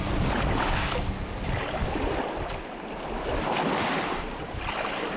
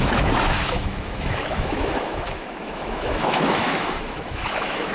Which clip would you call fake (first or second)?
second